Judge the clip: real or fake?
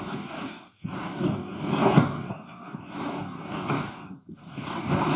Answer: fake